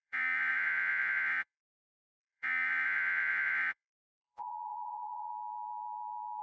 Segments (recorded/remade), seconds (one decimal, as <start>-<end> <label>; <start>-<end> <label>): 0.0-5.3 remade; 5.3-6.4 recorded